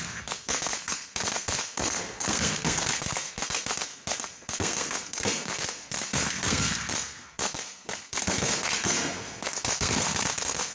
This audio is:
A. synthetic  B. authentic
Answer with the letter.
A